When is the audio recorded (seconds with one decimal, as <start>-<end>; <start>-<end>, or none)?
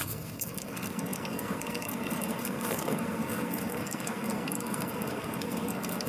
none